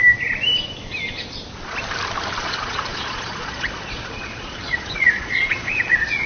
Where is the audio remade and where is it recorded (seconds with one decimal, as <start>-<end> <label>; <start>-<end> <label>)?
0.0-2.4 recorded; 2.4-6.3 remade